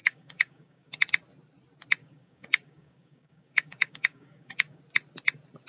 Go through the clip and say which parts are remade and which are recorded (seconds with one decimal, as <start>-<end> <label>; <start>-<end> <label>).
0.0-1.0 remade; 1.0-2.0 recorded; 2.0-4.8 remade; 4.8-5.7 recorded